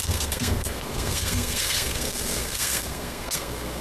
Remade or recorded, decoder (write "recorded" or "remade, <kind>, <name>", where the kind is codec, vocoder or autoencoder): remade, codec, SNAC